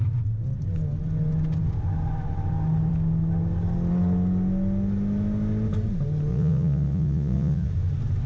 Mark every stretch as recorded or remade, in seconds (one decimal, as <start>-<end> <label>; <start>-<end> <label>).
0.0-6.3 recorded; 6.3-7.7 remade; 7.7-8.3 recorded